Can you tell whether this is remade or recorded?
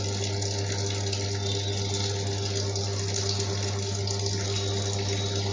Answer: recorded